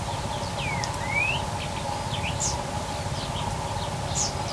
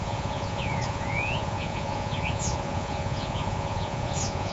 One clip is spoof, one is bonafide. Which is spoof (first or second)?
second